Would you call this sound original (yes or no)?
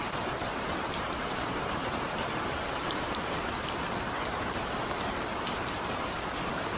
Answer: no